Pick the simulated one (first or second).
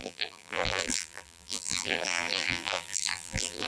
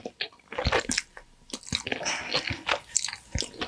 first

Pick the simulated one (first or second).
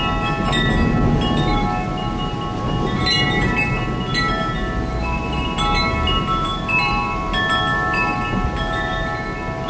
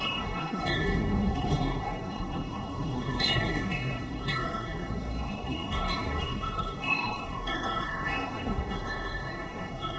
second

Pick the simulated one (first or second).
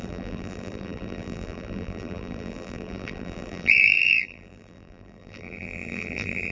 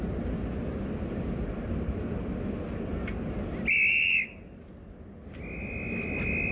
first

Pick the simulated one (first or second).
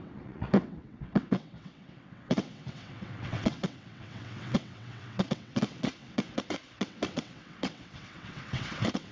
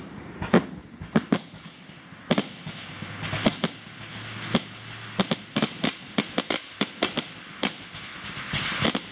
first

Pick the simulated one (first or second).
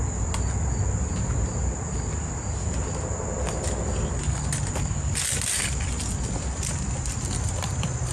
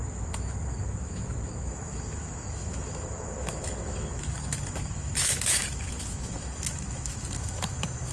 second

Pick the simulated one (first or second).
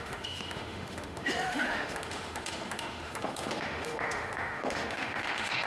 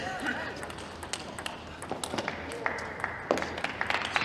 first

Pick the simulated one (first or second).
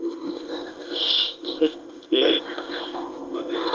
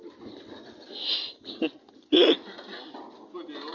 first